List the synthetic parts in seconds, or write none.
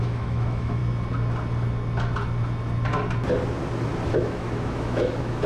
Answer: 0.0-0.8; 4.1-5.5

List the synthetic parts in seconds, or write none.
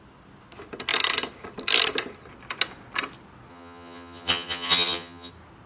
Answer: 3.5-5.3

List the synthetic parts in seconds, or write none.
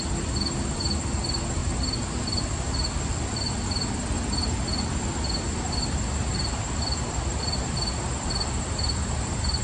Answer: 1.6-2.2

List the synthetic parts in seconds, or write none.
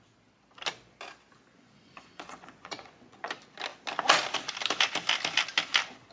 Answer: 1.5-3.3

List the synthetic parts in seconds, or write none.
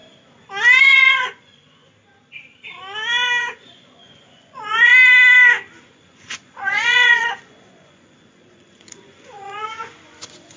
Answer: 0.8-1.9; 3.4-4.9; 5.8-10.6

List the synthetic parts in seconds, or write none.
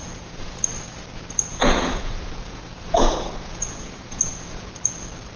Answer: 0.0-0.6; 1.5-4.7